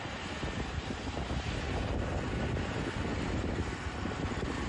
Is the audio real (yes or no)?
yes